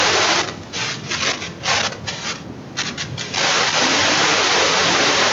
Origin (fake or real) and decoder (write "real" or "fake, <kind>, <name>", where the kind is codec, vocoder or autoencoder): real